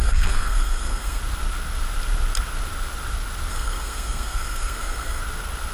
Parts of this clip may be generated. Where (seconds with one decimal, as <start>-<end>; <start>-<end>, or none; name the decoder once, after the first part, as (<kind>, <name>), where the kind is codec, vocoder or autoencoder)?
0.0-1.2 (codec, SNAC); 3.5-5.2